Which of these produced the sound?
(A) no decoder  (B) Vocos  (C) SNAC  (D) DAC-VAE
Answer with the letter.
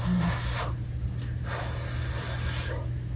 A